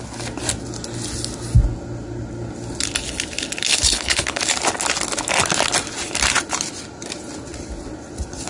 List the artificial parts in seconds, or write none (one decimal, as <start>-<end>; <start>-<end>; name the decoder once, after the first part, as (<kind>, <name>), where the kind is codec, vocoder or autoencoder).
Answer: 3.7-4.4 (codec, HILCodec)